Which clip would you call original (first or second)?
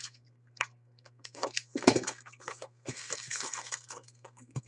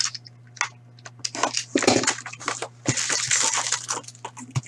second